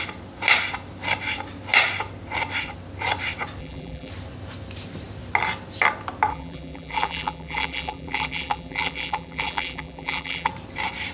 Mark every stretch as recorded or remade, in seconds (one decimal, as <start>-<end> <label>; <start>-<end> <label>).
0.0-3.6 recorded; 3.6-4.1 remade; 4.1-6.3 recorded; 6.3-10.5 remade; 10.5-11.1 recorded

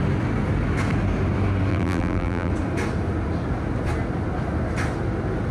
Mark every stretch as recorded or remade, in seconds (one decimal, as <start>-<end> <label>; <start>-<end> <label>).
0.0-1.7 recorded; 1.7-2.5 remade; 2.5-5.5 recorded

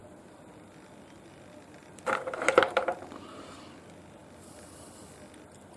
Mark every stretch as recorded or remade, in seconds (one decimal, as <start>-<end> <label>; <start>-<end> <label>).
0.0-0.5 remade; 0.5-1.8 recorded; 1.8-3.6 remade; 3.6-5.8 recorded

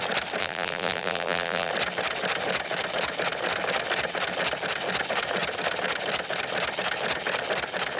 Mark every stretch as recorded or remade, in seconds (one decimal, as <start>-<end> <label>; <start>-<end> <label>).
0.0-0.4 recorded; 0.4-1.7 remade; 1.7-8.0 recorded